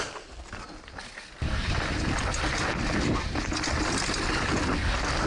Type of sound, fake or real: real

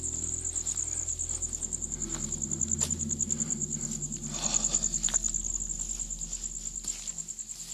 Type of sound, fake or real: real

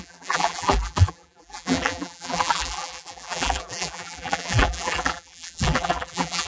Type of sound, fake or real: fake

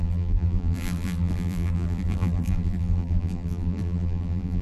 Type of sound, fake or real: fake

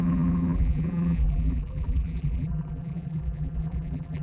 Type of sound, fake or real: fake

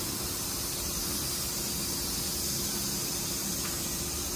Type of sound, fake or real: real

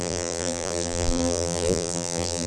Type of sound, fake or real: fake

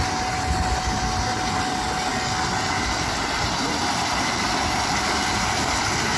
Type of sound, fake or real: real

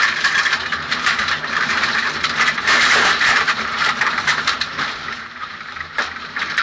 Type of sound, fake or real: fake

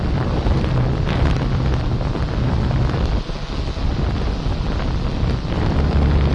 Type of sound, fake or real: real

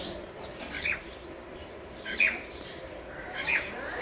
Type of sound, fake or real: fake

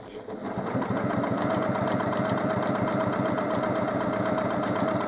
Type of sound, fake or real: real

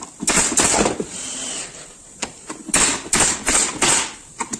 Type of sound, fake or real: fake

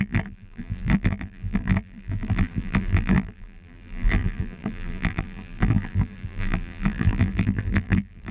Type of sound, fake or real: fake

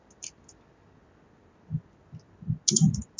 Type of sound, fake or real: real